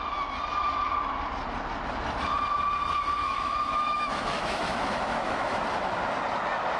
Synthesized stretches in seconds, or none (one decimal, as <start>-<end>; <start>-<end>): 3.2-5.6